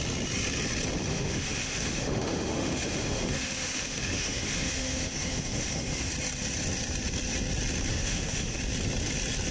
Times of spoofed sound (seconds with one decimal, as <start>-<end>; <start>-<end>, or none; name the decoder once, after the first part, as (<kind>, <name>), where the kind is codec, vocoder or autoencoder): 1.1-6.1 (autoencoder, DAC-VAE); 7.9-8.6

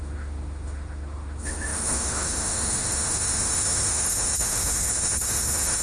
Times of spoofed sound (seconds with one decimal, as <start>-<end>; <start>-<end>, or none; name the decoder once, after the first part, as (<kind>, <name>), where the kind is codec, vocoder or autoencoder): 0.0-5.8 (autoencoder, DAC-VAE)

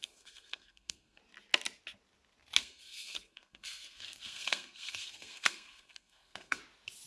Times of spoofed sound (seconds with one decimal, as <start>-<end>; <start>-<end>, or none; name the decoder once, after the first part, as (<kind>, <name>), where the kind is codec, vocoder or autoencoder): 0.0-1.2 (codec, SNAC); 2.6-6.6

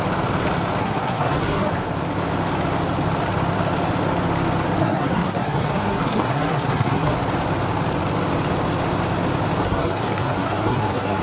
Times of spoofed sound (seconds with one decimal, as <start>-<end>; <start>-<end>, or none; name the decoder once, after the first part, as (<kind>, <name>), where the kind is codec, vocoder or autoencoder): 0.8-1.7 (codec, SNAC); 4.8-7.2; 9.6-11.2

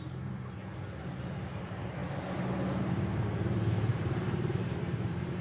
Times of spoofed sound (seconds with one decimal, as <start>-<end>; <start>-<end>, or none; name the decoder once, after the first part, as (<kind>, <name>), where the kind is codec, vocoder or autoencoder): 0.0-0.6 (vocoder, BigVGAN v2); 1.6-2.0; 2.8-5.4

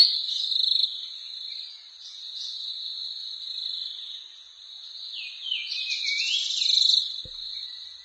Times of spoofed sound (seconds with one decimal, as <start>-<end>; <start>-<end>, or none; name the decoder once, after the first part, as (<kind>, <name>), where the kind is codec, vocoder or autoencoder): none

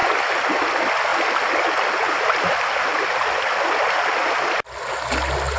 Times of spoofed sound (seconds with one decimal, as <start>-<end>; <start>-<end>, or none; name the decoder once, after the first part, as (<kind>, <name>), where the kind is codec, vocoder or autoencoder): none

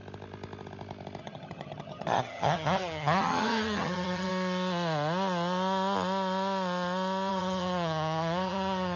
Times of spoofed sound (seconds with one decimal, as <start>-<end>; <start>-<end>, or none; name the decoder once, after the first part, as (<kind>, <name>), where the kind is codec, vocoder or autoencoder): 1.2-4.3 (vocoder, HiFi-GAN); 7.3-9.0